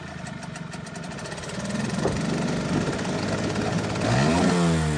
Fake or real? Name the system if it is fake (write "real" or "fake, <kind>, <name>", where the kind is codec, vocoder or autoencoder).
real